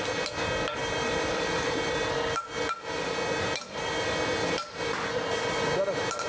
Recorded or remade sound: recorded